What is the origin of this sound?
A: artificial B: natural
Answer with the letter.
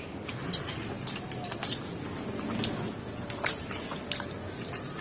B